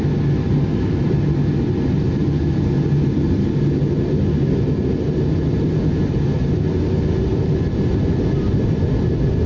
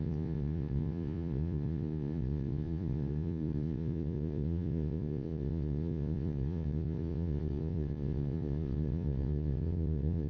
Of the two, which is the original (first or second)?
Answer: first